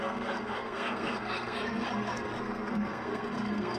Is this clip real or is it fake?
fake